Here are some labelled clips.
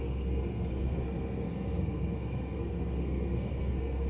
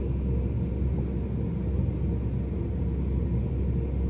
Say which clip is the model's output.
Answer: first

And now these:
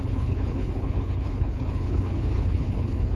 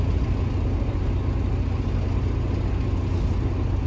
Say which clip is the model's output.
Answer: first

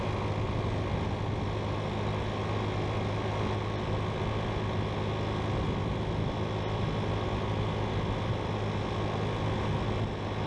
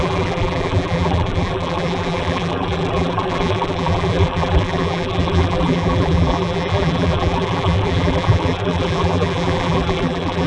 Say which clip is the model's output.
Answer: second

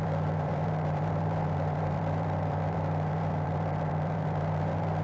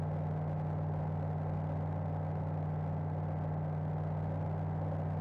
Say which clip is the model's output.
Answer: first